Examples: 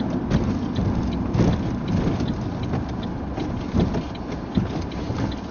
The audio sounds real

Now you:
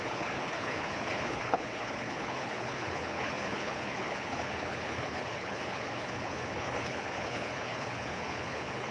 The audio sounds fake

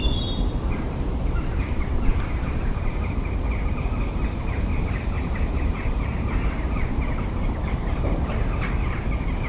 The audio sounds fake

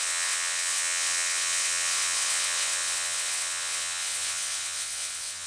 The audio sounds fake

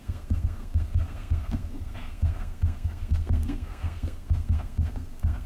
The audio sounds fake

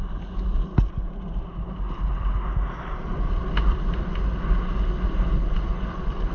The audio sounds real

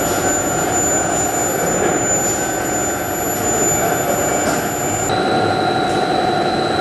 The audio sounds real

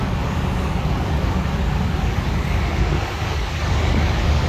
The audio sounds fake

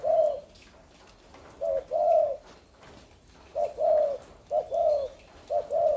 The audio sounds real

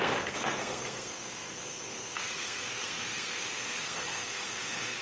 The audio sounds fake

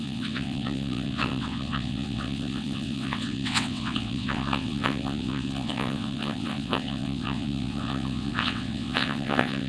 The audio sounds fake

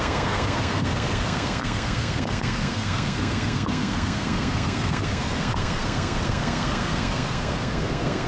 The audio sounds fake